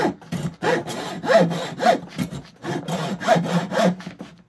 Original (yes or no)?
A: yes